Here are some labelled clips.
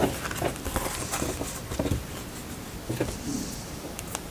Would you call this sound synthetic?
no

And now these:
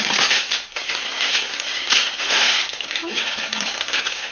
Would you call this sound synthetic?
yes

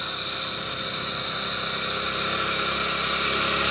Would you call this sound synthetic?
no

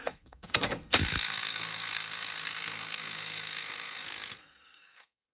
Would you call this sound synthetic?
yes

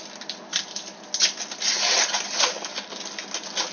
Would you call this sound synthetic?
no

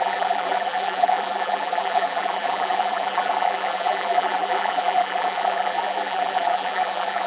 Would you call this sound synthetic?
yes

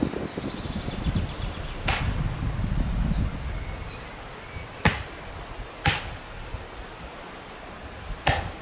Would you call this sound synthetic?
no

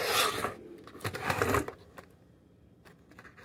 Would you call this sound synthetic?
no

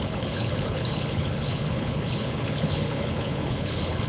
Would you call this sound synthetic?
yes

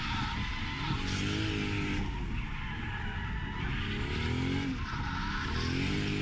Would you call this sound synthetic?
no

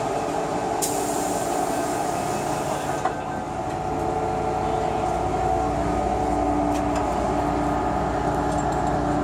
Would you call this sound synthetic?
no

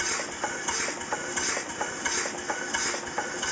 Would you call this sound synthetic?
no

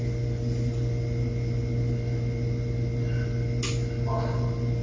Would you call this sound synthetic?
no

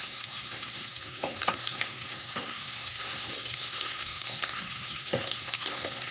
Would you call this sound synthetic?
yes